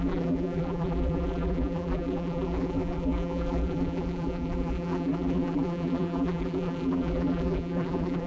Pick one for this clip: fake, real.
fake